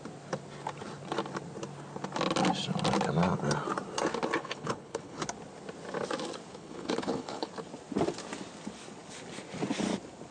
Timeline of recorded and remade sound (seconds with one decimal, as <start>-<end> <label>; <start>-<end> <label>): 0.0-4.4 recorded; 4.4-5.2 remade; 5.2-6.5 recorded; 6.5-7.5 remade; 7.5-10.3 recorded